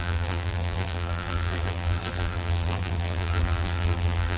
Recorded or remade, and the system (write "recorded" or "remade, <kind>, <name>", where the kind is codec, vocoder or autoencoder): remade, vocoder, BigVGAN v2